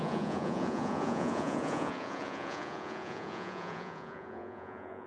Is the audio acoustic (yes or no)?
no